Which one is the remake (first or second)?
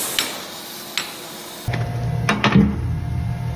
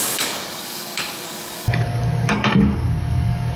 second